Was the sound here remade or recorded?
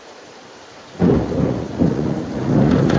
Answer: remade